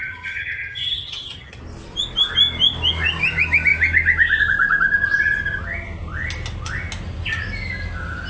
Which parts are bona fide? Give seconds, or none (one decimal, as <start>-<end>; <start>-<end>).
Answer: 1.6-8.3